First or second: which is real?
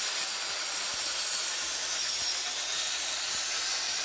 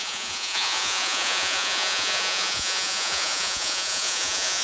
first